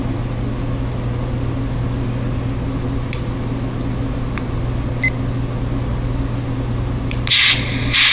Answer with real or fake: real